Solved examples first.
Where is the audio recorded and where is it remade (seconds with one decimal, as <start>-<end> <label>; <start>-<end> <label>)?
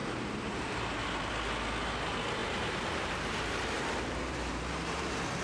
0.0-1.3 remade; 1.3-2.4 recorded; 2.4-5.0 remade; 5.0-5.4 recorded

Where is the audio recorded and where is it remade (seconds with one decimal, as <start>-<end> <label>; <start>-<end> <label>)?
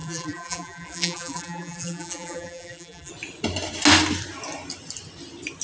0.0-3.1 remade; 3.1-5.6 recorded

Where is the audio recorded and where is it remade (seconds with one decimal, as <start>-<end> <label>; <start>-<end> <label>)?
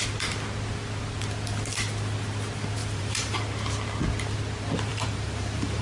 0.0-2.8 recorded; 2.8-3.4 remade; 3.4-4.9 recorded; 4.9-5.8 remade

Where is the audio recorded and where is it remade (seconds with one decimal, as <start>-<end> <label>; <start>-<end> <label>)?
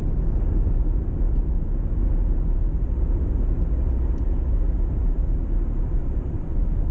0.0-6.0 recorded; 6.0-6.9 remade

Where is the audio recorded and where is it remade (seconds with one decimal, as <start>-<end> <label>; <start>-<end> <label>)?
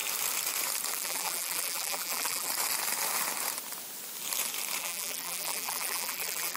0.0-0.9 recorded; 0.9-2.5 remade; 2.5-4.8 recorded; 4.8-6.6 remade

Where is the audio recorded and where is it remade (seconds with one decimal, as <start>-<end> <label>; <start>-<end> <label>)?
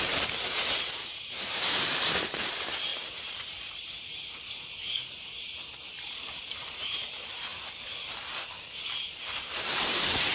0.0-7.5 remade; 7.5-9.5 recorded; 9.5-10.3 remade